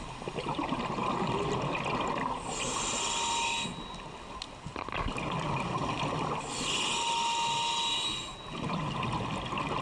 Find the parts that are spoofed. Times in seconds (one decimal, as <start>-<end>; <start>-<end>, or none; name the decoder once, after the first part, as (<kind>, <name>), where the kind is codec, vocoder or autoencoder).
none